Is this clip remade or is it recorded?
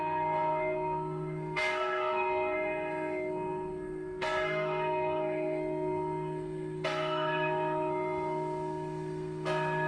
remade